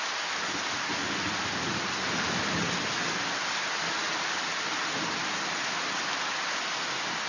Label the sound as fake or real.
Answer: real